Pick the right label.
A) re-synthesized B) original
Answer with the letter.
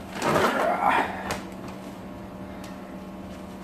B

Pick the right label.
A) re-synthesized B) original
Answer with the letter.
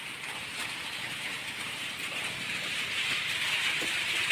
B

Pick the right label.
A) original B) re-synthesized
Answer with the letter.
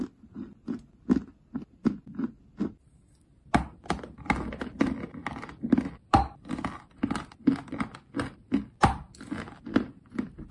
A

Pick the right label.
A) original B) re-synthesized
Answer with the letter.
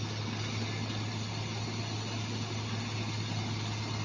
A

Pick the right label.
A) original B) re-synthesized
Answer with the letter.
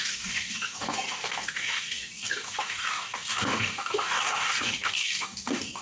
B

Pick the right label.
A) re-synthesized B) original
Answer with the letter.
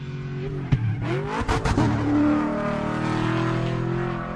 B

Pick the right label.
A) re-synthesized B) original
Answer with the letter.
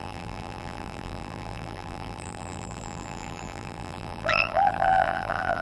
A